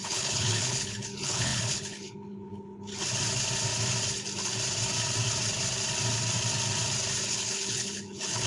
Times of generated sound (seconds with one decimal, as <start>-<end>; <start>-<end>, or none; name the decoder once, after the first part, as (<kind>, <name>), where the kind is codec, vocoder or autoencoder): 0.0-2.9 (codec, HILCodec); 7.3-8.5